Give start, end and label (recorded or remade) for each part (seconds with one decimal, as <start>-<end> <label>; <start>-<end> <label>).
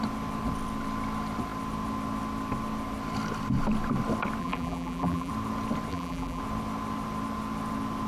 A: 0.0-4.4 recorded; 4.4-5.3 remade; 5.3-5.9 recorded; 5.9-6.4 remade; 6.4-8.1 recorded